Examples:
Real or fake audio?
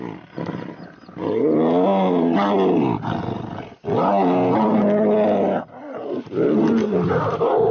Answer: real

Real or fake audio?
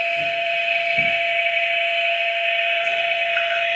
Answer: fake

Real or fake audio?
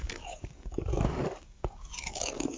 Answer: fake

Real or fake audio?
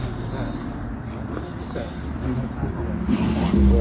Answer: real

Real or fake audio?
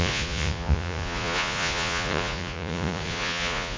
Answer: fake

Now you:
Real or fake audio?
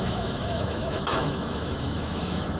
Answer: fake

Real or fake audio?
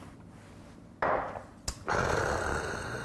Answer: real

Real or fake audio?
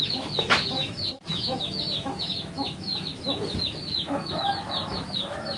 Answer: fake